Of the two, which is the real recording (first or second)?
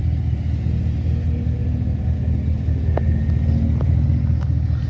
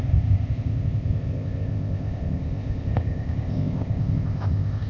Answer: first